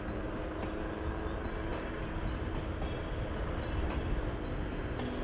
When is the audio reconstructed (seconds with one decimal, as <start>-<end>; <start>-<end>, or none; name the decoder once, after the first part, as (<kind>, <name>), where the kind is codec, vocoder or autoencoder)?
none

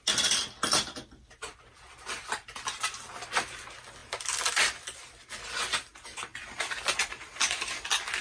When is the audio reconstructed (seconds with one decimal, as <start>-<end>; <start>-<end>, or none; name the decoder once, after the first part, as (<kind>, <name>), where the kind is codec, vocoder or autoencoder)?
4.0-5.5 (vocoder, BigVGAN v2); 6.3-7.3